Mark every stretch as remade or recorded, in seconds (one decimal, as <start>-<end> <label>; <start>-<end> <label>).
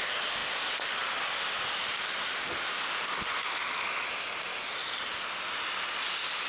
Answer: 0.0-6.5 recorded